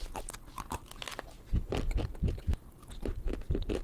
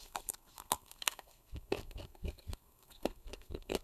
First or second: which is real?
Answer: first